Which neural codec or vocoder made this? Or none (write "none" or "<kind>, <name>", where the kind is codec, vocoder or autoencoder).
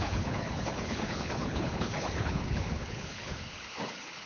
codec, HILCodec